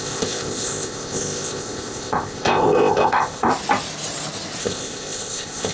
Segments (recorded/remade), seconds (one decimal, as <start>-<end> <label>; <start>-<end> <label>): 0.0-3.5 remade; 3.5-4.6 recorded; 4.6-5.7 remade